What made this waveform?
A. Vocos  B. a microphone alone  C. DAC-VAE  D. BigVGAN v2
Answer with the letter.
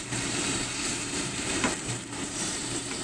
D